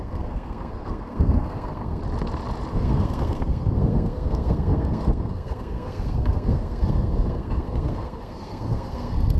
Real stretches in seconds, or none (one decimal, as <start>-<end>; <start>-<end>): 2.0-2.7